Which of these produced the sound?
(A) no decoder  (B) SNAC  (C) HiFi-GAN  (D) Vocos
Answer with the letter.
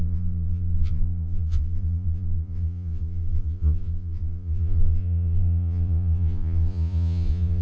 D